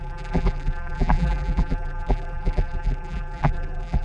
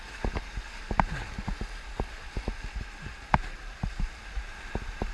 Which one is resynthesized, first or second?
first